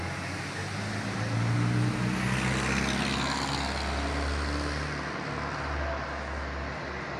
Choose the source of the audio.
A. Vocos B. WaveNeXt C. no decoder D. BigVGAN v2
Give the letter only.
C